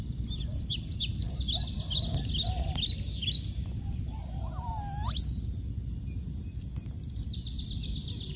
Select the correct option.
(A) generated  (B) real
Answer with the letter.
B